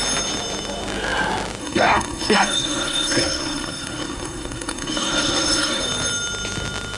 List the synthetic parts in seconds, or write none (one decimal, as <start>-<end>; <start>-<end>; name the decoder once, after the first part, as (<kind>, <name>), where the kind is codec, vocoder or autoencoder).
1.6-5.8 (codec, SNAC)